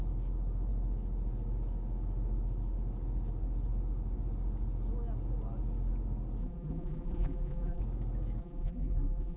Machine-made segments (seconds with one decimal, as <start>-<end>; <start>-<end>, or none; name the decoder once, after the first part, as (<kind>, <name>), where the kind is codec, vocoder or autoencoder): 6.4-7.8 (vocoder, BigVGAN v2); 8.4-9.4